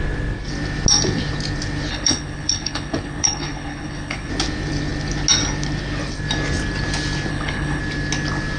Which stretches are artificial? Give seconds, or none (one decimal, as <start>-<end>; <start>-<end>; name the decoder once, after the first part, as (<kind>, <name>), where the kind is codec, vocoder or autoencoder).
1.9-4.3 (codec, HILCodec); 7.3-7.8